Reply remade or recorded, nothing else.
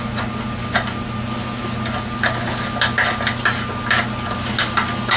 recorded